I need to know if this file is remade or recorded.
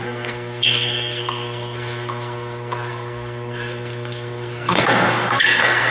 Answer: remade